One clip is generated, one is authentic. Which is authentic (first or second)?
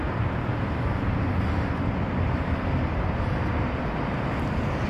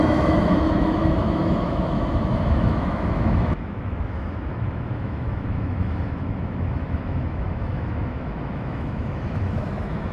first